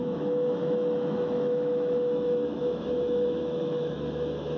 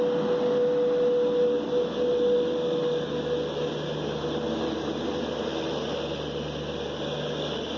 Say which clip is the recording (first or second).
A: second